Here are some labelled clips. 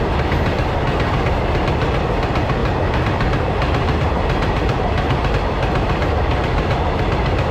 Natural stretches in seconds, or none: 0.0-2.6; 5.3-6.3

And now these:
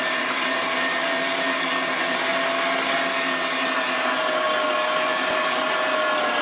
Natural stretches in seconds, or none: 2.3-5.4

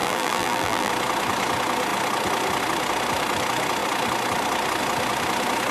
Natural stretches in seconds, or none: 0.9-5.7

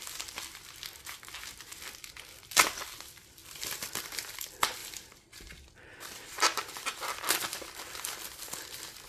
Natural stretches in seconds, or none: 0.0-3.4; 4.0-4.8; 7.1-9.1